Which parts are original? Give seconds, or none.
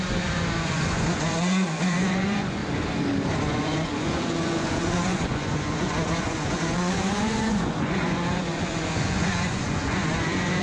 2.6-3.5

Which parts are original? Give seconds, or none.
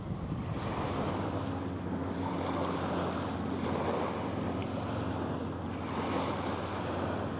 0.0-7.4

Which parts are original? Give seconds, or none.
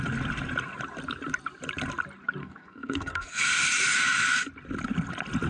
0.0-2.4; 3.4-5.5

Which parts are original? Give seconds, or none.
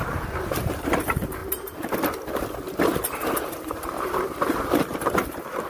1.4-4.8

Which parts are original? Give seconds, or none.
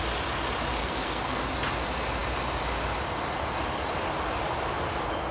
0.0-0.8; 1.4-5.3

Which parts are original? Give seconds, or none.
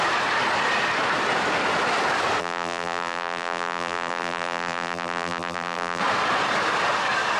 0.0-2.4; 6.0-7.4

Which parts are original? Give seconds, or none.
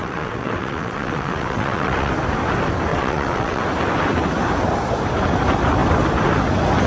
2.1-2.9; 3.6-6.9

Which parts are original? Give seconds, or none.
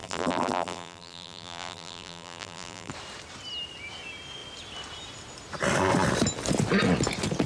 2.9-7.5